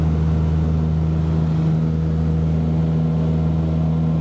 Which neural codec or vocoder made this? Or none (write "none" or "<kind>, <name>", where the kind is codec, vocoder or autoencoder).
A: none